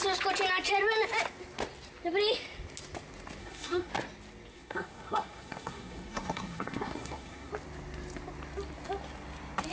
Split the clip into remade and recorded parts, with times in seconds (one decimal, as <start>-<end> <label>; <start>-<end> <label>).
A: 0.0-3.4 recorded; 3.4-3.9 remade; 3.9-4.5 recorded; 4.5-7.5 remade; 7.5-9.7 recorded